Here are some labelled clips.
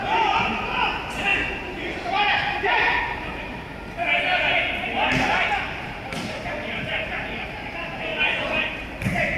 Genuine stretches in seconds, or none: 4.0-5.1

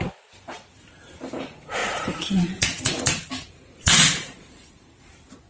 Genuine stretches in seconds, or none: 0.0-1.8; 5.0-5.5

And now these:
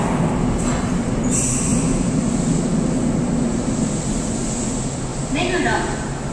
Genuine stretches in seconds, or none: 0.0-6.3

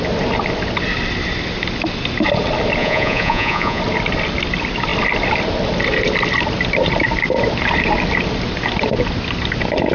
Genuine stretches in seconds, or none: 0.0-2.8; 3.8-9.9

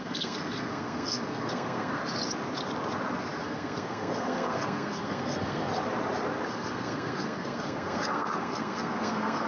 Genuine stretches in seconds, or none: 2.0-3.4; 5.7-6.5